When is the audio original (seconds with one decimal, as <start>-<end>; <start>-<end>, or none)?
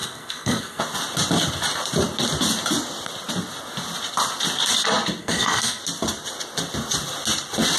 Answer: 0.8-5.2; 5.8-7.8